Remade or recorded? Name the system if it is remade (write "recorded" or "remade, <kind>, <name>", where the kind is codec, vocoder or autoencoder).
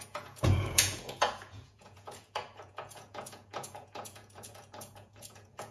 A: remade, vocoder, Vocos